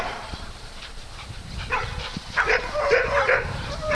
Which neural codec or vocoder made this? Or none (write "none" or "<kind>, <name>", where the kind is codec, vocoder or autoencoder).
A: vocoder, BigVGAN v2